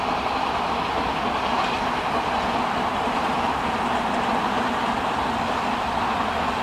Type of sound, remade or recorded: recorded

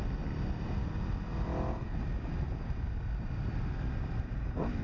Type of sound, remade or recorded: recorded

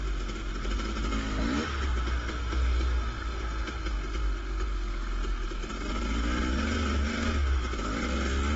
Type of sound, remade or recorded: recorded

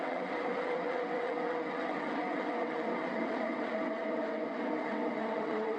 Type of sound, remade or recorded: remade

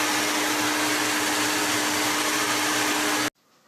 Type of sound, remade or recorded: recorded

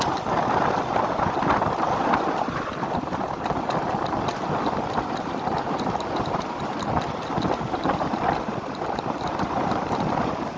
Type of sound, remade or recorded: recorded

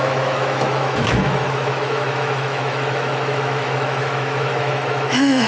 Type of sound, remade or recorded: remade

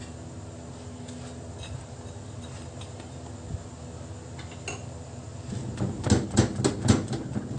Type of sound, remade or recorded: recorded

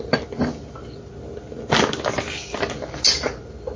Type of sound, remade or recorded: recorded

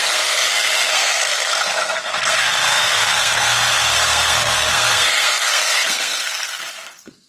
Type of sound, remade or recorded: remade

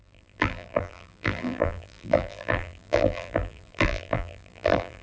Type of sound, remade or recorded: remade